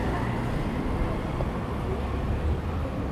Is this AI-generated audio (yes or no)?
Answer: no